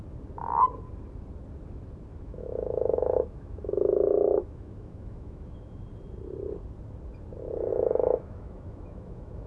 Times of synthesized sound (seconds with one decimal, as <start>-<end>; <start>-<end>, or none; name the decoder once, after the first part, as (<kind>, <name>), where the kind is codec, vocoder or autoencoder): 2.1-5.8 (autoencoder, DAC-VAE); 7.7-9.5